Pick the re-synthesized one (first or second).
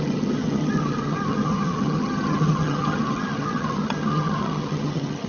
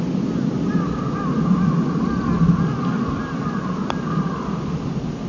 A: first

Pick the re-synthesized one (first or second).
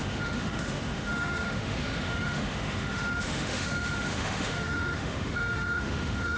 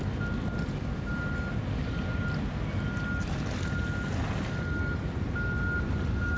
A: first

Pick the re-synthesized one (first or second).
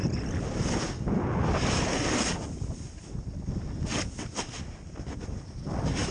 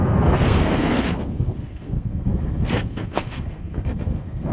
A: second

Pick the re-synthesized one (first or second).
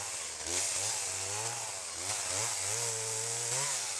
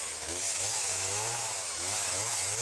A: second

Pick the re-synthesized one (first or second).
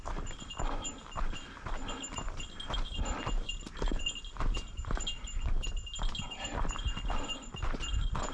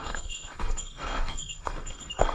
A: second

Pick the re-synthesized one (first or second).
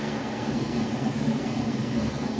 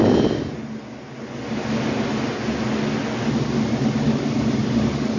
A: first